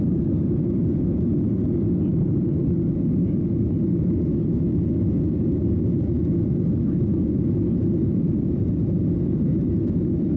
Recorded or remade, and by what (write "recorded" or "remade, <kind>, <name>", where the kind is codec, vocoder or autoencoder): recorded